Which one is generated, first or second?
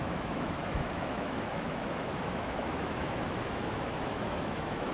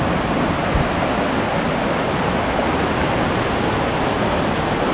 first